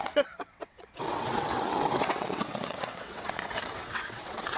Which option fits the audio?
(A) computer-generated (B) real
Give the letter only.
A